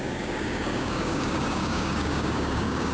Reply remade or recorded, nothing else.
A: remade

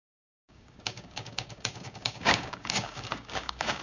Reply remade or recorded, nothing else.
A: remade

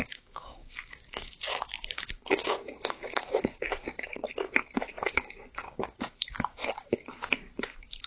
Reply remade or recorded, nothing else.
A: remade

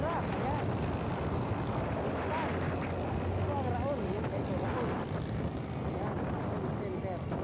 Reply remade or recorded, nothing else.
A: recorded